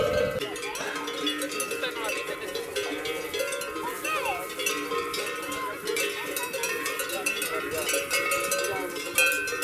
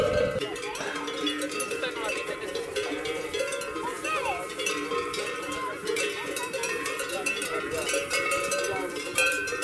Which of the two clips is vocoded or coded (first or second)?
second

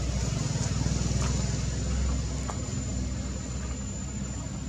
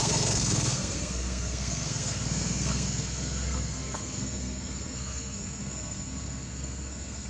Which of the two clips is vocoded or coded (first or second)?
second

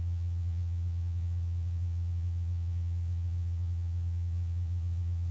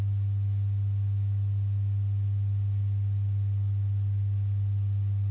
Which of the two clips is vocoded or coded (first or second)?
first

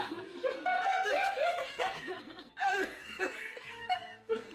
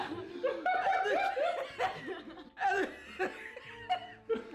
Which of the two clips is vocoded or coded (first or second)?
first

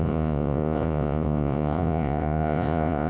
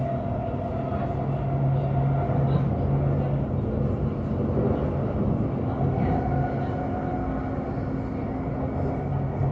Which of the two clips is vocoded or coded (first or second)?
first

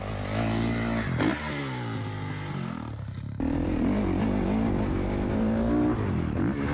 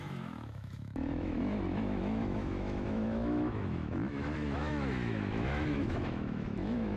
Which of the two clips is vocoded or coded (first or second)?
second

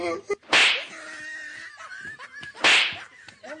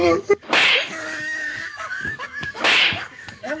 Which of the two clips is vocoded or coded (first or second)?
second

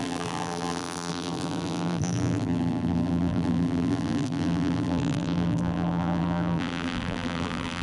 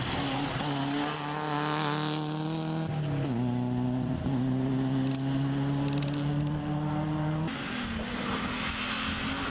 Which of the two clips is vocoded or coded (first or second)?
first